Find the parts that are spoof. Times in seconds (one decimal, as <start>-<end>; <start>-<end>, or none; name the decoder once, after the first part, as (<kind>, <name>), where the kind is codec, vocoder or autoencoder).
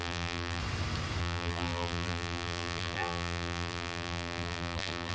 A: 0.0-0.6 (vocoder, BigVGAN v2); 1.2-5.1